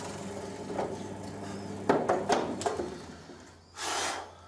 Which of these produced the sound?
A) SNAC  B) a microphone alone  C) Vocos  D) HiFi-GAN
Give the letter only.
B